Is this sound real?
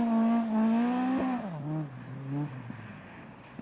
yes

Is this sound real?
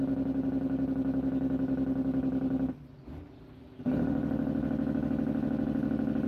yes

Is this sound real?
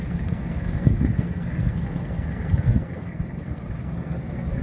no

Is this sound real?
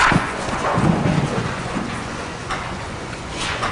no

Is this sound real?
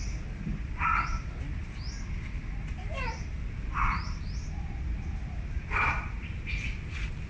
yes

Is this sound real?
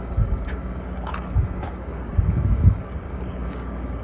no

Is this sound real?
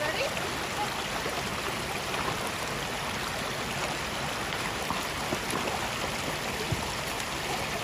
yes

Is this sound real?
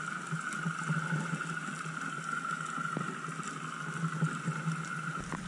yes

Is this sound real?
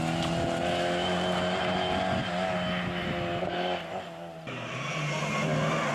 yes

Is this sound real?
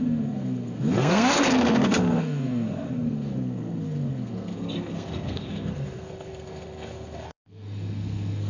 no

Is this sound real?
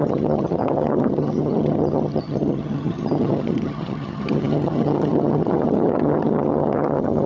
no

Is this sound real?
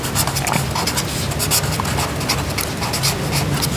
yes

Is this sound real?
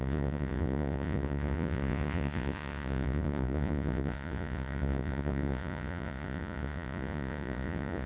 no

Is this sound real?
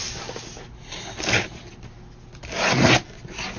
yes